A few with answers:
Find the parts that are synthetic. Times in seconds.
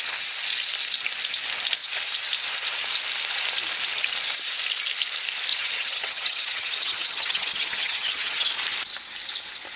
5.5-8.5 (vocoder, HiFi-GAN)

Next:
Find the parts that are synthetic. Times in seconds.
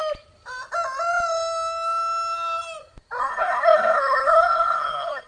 3.2-5.3 (codec, SNAC)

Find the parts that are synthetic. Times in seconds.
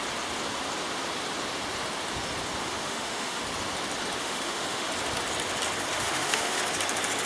2.6-3.4 (autoencoder, DAC-VAE); 4.2-4.9; 5.9-6.6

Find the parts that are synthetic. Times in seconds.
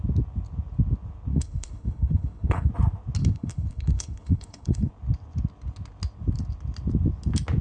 1.3-2.7 (codec, HILCodec); 3.2-4.9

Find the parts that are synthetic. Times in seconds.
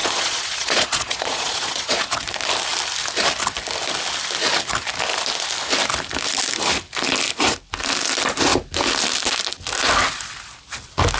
0.0-2.1 (vocoder, Vocos)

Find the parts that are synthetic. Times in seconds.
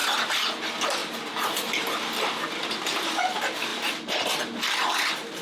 none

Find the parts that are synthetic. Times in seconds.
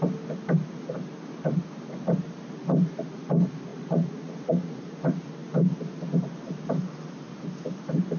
3.7-5.0 (vocoder, Vocos)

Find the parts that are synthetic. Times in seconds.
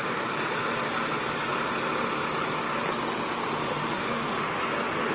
3.6-4.6 (autoencoder, DAC-VAE)